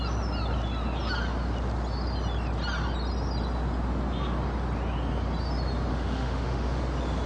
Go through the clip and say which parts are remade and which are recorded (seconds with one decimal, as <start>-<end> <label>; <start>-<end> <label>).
0.0-5.9 recorded; 5.9-6.8 remade; 6.8-7.3 recorded